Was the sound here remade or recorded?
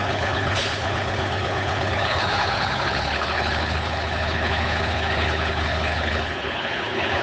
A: remade